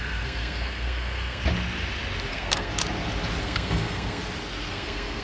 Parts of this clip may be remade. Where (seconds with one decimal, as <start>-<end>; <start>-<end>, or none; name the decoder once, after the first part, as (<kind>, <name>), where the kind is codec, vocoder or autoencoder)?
0.0-1.4 (codec, SNAC); 2.3-2.7; 3.4-4.2; 4.7-5.2